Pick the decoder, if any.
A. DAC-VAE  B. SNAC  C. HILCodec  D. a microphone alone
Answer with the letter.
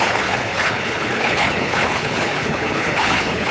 C